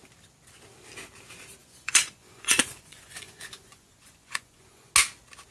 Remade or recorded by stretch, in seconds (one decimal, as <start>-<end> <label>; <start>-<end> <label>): 0.0-1.6 recorded; 1.6-4.9 remade; 4.9-5.5 recorded